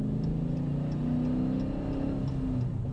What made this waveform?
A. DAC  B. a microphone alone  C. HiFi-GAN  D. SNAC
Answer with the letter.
B